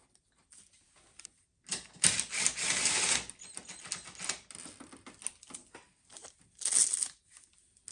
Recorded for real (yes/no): yes